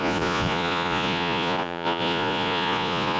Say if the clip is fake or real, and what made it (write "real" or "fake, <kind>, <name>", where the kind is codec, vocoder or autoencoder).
fake, vocoder, Vocos